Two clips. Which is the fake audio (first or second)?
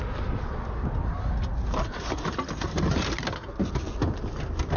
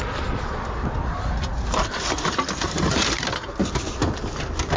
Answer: second